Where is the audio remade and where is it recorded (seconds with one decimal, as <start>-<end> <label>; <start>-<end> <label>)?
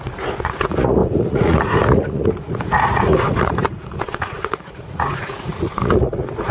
0.0-6.5 remade